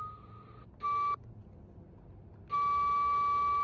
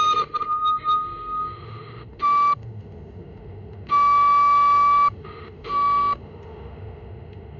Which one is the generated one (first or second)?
second